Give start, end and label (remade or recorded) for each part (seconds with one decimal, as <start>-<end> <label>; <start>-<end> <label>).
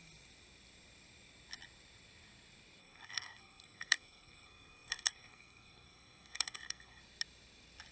0.0-2.8 recorded; 2.8-7.0 remade; 7.0-7.9 recorded